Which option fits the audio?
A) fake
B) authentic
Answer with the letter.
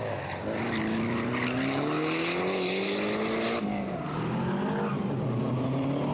B